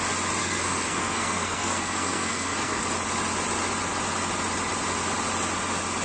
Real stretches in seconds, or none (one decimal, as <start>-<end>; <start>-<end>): 0.0-0.4; 2.8-6.0